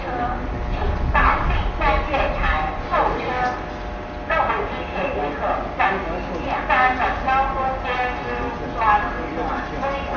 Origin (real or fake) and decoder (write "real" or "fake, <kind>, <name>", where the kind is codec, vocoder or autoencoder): real